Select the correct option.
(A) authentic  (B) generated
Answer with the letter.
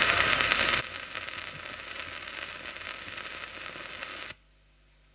A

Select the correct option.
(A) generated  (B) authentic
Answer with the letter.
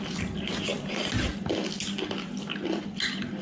B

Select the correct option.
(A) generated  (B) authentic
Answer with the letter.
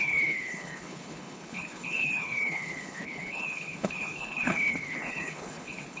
A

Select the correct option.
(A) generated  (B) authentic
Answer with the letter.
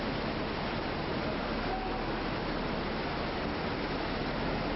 B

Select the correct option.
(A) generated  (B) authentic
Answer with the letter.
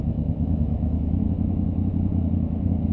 A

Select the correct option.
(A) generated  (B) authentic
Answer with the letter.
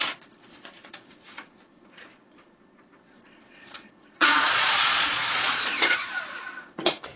A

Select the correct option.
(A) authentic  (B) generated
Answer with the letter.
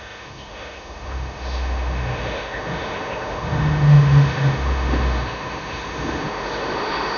B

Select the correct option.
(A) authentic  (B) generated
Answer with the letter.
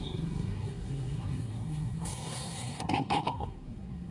B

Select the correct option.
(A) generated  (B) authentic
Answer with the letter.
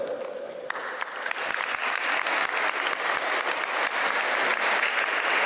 B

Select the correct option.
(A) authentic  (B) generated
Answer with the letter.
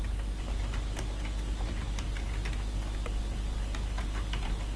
A